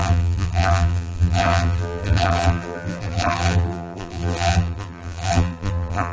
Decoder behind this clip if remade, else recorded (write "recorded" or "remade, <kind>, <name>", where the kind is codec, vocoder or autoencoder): remade, vocoder, BigVGAN v2